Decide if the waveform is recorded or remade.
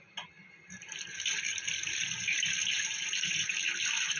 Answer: recorded